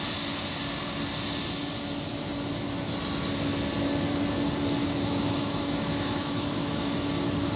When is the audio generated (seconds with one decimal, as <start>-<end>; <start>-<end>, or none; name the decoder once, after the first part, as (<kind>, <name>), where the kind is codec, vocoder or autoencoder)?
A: 4.8-6.9 (autoencoder, DAC-VAE)